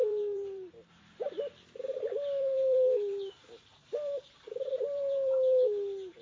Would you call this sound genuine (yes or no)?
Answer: no